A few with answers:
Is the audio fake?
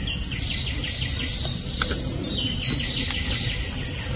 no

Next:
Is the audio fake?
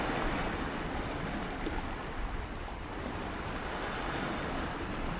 no